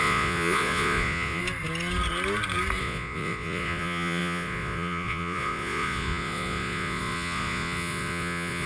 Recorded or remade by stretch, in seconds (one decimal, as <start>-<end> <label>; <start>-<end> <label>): 0.0-1.4 remade; 1.4-2.8 recorded; 2.8-8.7 remade